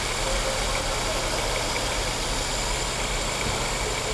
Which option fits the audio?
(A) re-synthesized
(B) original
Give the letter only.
B